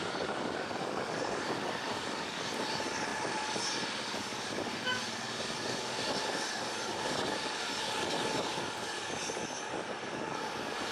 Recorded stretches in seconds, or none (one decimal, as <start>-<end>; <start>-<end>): none